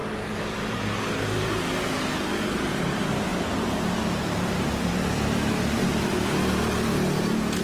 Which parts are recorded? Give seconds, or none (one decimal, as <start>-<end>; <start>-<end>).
1.6-5.8; 6.3-7.6